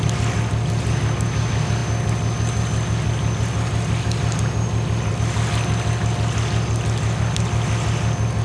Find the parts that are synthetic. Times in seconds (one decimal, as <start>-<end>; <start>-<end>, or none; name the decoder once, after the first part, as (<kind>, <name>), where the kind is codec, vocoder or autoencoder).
none